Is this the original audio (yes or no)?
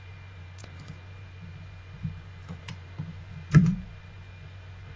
no